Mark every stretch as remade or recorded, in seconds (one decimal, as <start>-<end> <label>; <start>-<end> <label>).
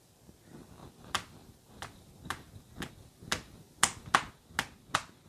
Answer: 0.0-5.3 recorded